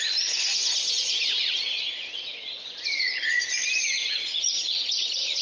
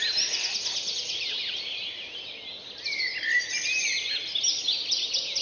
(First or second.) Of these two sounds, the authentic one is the second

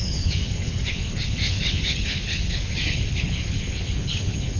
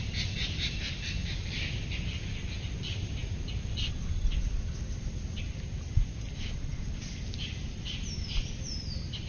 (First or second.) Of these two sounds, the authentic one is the second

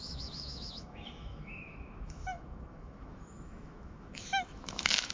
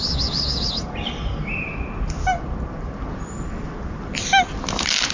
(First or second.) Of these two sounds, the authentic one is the second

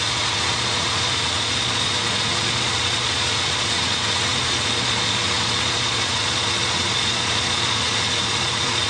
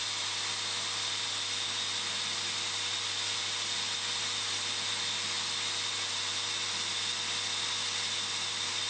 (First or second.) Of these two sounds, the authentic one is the second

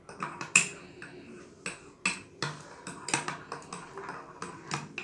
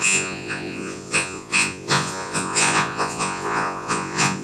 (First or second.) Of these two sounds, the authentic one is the first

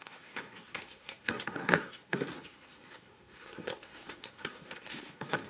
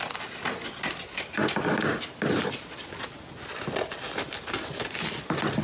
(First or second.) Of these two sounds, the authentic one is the second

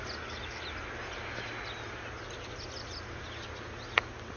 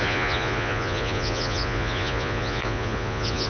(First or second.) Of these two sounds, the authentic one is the first